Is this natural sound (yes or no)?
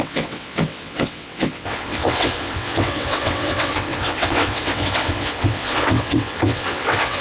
no